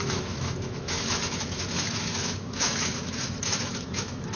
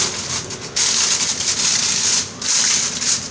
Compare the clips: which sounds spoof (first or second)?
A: first